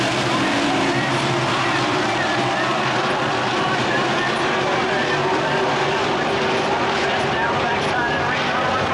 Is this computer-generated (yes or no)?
yes